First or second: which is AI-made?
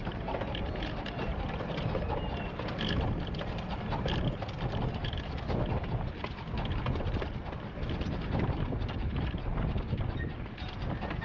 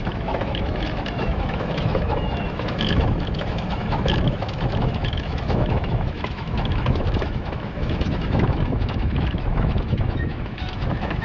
second